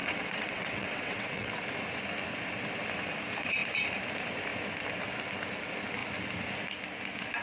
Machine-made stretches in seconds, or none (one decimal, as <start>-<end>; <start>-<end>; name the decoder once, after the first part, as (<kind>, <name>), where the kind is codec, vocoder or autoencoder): 0.0-1.5 (vocoder, WaveNeXt)